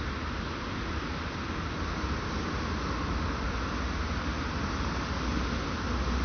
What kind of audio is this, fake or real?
real